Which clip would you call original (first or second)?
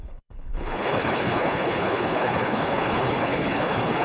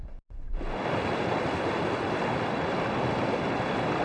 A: second